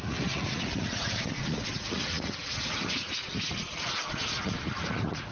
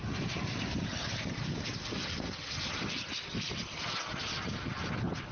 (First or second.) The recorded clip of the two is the second